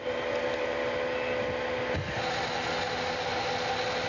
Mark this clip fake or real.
real